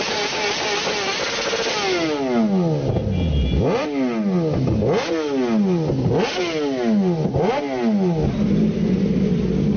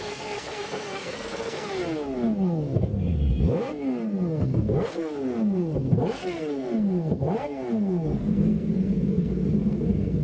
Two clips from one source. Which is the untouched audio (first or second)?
first